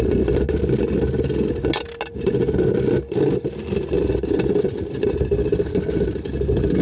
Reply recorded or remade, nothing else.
recorded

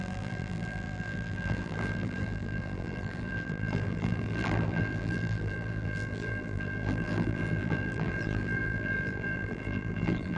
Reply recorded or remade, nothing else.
remade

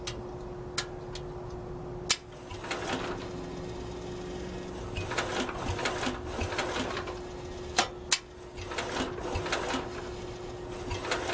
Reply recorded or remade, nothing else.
recorded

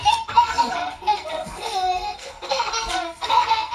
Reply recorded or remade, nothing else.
remade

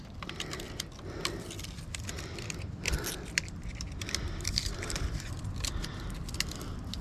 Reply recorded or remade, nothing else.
recorded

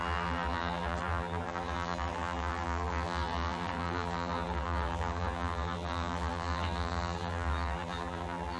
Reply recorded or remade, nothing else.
remade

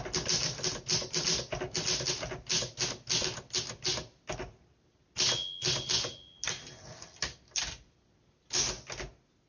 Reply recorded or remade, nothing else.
recorded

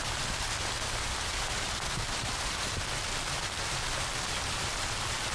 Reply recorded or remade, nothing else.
recorded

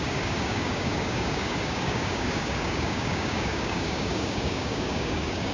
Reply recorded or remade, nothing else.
remade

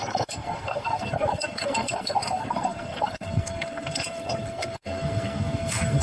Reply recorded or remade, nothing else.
remade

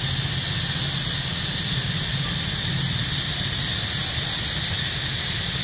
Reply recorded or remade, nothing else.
recorded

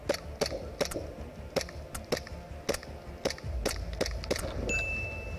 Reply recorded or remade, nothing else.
recorded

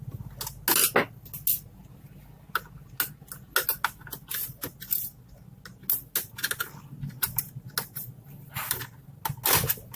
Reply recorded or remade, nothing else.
recorded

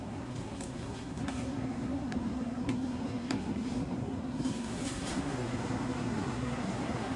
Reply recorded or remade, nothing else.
remade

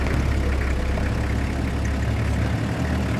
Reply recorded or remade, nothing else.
recorded